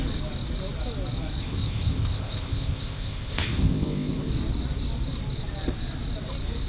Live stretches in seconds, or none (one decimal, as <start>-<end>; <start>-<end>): 0.0-1.4; 4.3-6.7